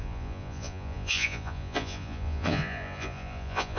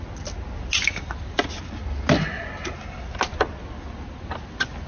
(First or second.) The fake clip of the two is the first